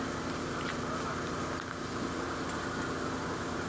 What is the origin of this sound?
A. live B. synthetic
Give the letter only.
A